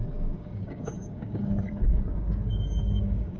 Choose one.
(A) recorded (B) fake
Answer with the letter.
B